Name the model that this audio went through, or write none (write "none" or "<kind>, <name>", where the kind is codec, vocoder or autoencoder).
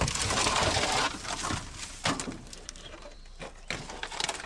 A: vocoder, BigVGAN v2